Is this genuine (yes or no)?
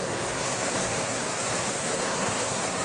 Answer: no